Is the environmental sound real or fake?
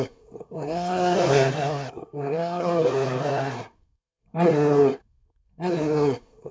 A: fake